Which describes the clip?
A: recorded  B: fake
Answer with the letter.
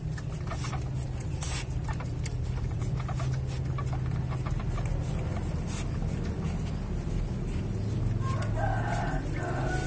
A